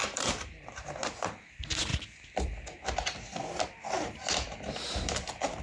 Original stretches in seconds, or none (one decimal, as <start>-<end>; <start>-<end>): 0.6-5.6